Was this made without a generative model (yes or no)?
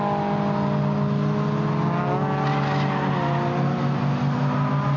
yes